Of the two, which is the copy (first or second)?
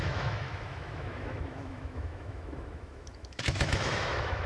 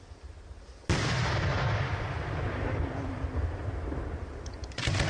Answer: first